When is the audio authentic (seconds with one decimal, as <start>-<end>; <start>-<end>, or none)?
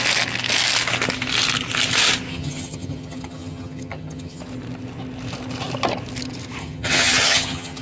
0.0-2.3; 4.4-6.6